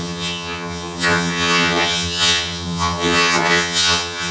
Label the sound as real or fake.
fake